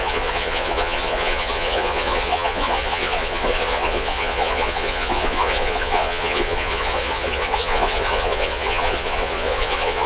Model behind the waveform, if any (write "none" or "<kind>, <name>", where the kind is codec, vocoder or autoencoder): vocoder, Vocos